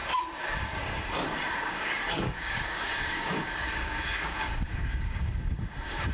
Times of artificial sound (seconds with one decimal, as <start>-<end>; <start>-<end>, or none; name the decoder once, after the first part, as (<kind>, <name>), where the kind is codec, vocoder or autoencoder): 1.5-6.1 (codec, DAC)